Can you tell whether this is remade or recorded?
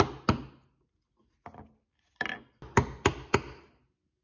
recorded